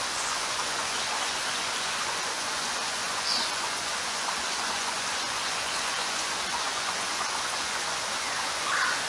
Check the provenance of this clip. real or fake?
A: fake